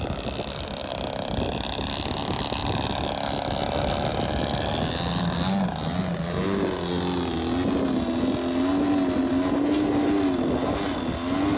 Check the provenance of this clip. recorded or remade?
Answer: recorded